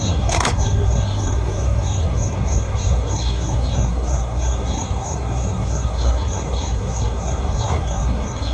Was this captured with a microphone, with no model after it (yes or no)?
no